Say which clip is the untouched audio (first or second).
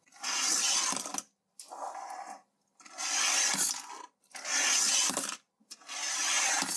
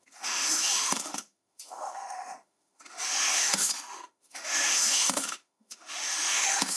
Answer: first